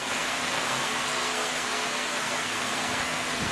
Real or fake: fake